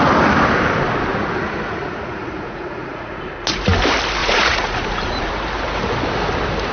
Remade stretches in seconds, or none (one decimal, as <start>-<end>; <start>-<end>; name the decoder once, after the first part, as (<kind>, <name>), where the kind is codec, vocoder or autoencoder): 1.1-3.2 (vocoder, Vocos); 4.2-5.3